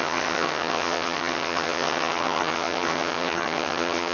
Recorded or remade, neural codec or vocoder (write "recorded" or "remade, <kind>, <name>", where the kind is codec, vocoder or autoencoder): remade, vocoder, HiFi-GAN